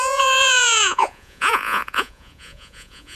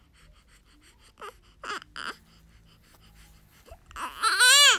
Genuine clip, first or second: second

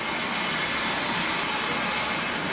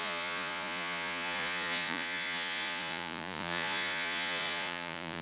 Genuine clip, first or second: first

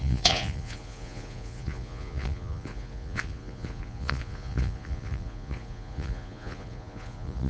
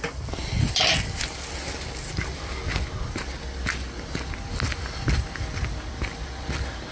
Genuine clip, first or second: second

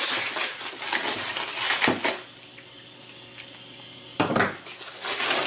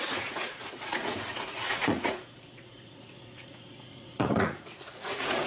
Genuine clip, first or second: first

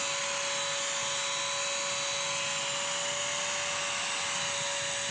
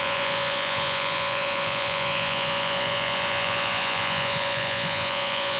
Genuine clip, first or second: first